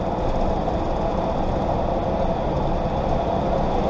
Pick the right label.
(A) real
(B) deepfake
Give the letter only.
A